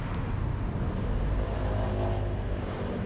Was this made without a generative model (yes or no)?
yes